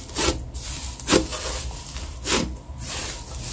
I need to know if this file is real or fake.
real